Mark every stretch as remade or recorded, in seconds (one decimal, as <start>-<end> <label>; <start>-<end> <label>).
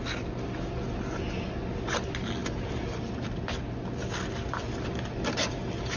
0.0-6.0 recorded